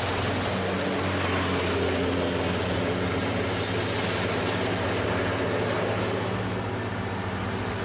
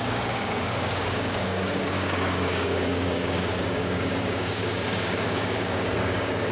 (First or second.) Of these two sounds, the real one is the first